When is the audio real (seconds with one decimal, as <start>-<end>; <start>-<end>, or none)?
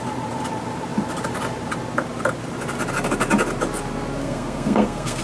0.0-4.2